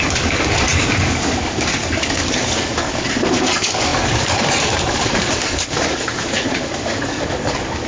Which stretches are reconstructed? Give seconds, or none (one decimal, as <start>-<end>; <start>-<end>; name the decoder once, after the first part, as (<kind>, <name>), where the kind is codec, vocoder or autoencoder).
0.0-7.9 (codec, DAC)